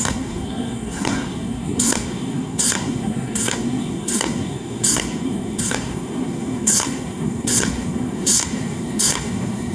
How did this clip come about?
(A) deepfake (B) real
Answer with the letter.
A